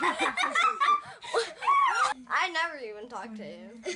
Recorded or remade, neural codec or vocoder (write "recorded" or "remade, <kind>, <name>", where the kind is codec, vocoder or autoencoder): recorded